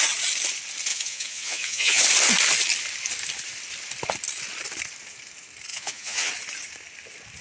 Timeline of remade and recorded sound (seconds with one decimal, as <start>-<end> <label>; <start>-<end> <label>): 0.0-0.9 recorded; 0.9-2.0 remade; 2.0-5.7 recorded; 5.7-6.3 remade; 6.3-7.4 recorded